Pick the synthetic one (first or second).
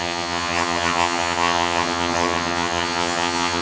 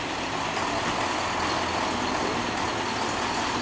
first